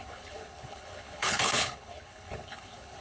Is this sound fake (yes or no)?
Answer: yes